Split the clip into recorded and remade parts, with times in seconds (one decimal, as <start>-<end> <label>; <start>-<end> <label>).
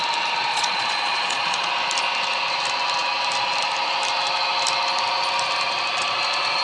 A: 0.0-0.5 recorded; 0.5-1.7 remade; 1.7-6.6 recorded